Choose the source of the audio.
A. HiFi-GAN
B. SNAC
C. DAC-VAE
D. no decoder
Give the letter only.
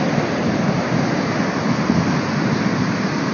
D